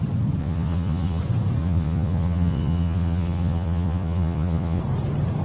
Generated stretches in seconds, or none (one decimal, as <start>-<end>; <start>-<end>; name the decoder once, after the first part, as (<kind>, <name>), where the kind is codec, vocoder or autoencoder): 0.4-1.2 (vocoder, Vocos); 1.6-4.8